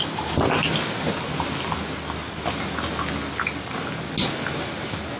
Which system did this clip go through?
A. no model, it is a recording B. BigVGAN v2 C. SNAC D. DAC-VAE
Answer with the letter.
A